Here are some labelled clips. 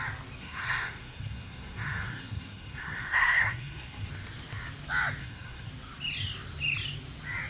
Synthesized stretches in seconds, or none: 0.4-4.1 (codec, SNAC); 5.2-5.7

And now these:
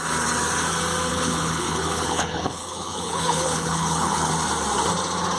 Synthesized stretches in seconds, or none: 1.1-4.3 (codec, HILCodec)

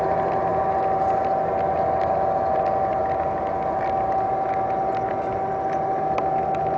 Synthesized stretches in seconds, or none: none